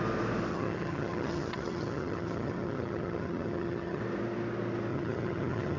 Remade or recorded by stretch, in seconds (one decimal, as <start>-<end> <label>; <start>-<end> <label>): 0.0-0.5 recorded; 0.5-4.0 remade; 4.0-4.9 recorded; 4.9-5.8 remade